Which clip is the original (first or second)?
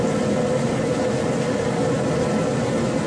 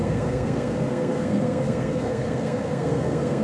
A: first